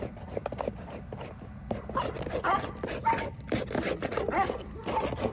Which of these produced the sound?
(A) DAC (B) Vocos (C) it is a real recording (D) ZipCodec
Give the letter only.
C